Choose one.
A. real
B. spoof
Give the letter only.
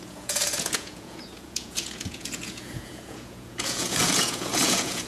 B